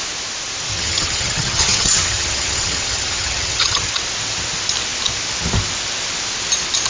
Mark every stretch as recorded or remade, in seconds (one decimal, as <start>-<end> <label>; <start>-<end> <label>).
0.0-0.7 recorded; 0.7-3.9 remade; 3.9-6.9 recorded